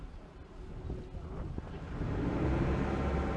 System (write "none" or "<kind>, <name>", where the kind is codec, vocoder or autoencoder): none